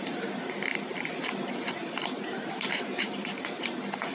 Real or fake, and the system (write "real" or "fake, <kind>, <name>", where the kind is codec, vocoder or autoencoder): fake, vocoder, BigVGAN v2